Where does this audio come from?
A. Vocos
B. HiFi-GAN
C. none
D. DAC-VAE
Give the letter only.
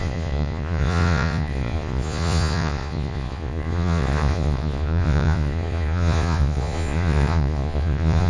A